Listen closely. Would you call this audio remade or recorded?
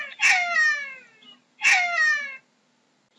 recorded